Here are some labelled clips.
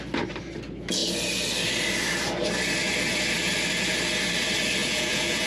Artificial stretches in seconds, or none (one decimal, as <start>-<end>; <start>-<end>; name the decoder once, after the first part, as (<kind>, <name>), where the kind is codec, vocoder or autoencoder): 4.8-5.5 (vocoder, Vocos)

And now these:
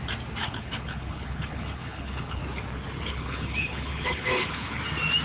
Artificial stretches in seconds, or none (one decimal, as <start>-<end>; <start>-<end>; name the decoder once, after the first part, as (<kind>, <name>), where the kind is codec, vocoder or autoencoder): 0.4-2.4 (codec, HILCodec); 3.1-4.8

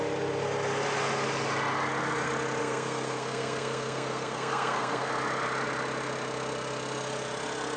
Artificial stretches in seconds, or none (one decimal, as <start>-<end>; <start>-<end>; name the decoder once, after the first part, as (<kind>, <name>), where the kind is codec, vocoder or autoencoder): 2.6-5.1 (codec, SNAC)

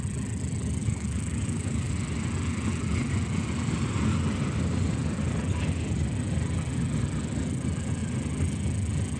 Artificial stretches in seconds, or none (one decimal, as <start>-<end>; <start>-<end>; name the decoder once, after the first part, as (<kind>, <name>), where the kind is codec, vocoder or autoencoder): 0.8-1.9 (codec, DAC)

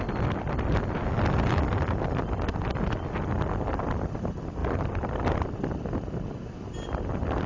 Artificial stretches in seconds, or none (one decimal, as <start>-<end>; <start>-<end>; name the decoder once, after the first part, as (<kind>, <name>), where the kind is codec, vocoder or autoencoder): 4.6-5.6 (vocoder, BigVGAN v2)

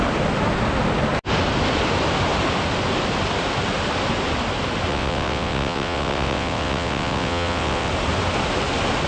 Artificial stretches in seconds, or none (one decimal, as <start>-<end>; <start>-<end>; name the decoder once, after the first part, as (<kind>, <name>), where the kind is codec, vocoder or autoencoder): 4.9-7.9 (vocoder, WaveNeXt)

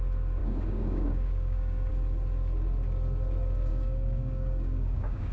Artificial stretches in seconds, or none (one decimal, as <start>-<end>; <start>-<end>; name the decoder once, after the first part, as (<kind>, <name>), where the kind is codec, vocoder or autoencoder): 0.4-1.9 (codec, DAC); 3.7-5.3